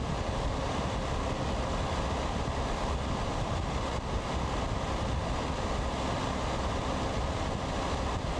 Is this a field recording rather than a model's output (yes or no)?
yes